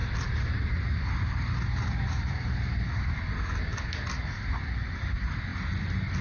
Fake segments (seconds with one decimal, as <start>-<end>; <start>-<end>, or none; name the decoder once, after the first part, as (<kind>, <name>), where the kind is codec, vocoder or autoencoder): 0.0-3.2 (vocoder, BigVGAN v2)